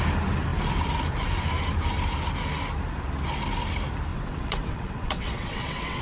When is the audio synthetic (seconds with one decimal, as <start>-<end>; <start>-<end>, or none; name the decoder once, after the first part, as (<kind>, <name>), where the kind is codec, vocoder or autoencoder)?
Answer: 4.1-6.0 (vocoder, WaveNeXt)